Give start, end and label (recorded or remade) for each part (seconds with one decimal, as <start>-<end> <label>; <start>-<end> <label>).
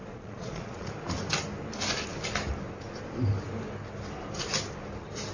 0.0-0.9 remade; 0.9-5.3 recorded